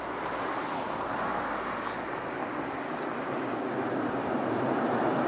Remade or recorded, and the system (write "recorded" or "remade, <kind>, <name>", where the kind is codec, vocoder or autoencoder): recorded